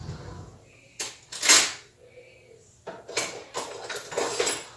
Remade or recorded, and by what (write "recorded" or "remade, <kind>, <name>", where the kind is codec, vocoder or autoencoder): recorded